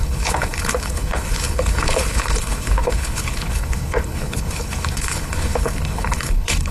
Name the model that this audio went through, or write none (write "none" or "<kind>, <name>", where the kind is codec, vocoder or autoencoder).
codec, HILCodec